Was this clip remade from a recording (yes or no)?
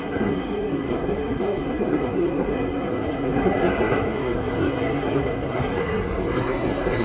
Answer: yes